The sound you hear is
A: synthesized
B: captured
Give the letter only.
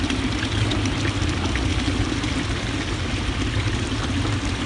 B